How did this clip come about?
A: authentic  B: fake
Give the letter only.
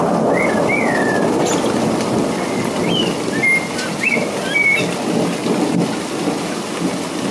A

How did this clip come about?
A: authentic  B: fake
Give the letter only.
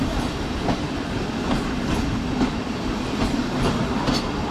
A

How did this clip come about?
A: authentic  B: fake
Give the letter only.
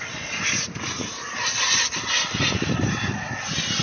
A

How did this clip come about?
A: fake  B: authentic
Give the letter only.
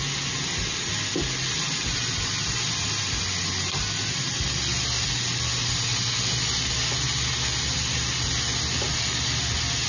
B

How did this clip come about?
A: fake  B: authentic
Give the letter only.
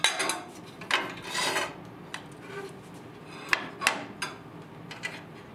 B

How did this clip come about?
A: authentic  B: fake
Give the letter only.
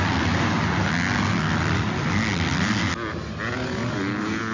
A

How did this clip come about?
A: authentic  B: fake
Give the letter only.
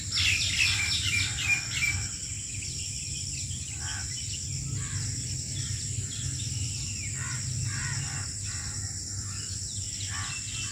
A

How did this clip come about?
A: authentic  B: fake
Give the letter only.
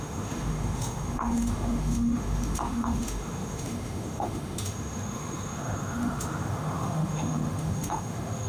B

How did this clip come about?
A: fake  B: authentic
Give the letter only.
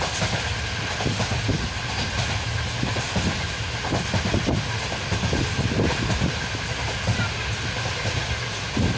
B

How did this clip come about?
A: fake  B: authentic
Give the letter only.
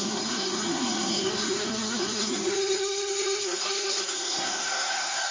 A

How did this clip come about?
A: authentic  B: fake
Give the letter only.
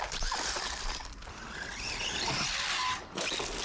A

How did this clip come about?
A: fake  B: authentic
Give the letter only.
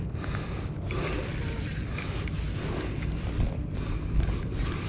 B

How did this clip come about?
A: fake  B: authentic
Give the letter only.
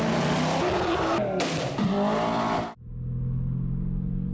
B